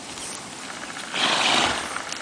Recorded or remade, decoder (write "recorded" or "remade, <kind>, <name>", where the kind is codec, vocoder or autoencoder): recorded